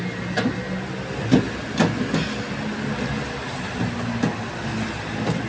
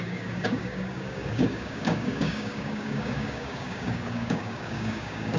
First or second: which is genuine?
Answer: first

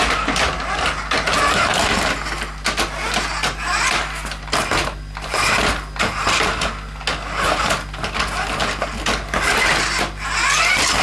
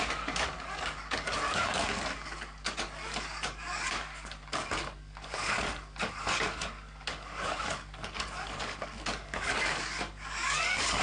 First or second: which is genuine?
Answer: first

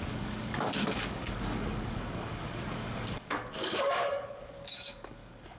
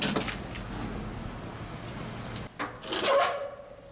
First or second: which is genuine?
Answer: second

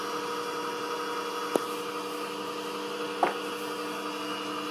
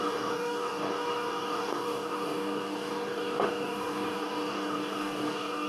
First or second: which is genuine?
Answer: first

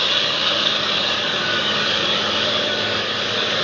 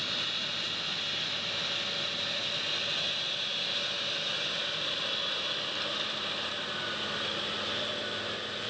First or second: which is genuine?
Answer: second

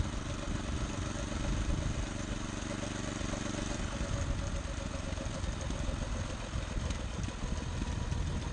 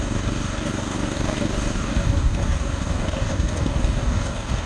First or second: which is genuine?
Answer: first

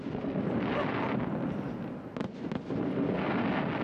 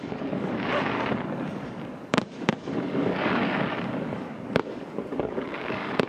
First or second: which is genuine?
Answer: first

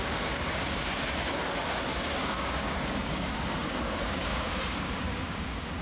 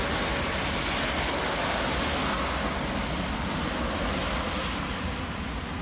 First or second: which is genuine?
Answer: second